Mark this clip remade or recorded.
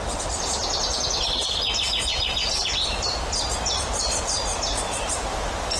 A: recorded